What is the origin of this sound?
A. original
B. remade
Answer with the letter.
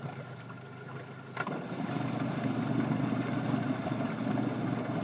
A